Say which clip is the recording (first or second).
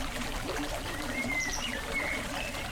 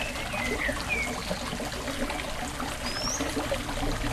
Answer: second